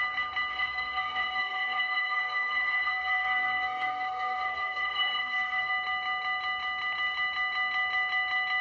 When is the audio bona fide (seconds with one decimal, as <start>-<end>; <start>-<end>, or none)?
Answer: 0.0-0.5; 5.7-8.6